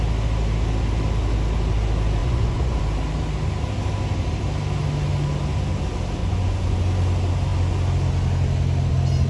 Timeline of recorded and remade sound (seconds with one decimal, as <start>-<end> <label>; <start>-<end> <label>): 0.0-2.2 recorded; 2.2-2.8 remade; 2.8-6.2 recorded; 6.2-6.8 remade; 6.8-9.3 recorded